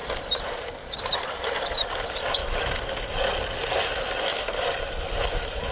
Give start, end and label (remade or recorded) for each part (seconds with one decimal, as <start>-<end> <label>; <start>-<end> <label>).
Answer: 0.0-1.4 remade; 1.4-5.7 recorded